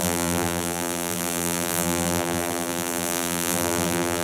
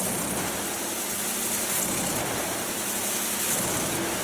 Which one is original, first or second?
second